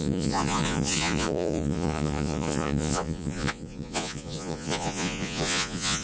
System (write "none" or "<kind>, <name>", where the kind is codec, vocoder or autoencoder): vocoder, Vocos